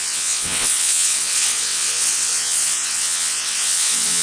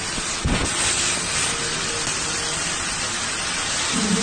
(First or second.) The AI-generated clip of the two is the first